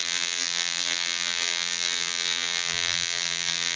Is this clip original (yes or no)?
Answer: no